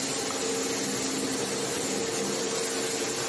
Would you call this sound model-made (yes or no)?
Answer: no